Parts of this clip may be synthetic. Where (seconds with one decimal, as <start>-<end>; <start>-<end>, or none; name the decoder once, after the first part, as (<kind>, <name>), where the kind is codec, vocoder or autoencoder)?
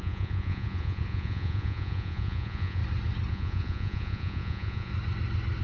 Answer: 0.0-2.8 (vocoder, Vocos); 3.3-4.9